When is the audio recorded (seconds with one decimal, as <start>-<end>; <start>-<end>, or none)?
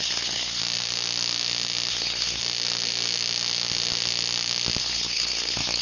0.6-1.9; 2.4-4.8